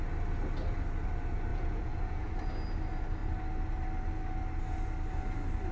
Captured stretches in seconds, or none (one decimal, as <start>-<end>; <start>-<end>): 0.0-1.5; 2.3-5.7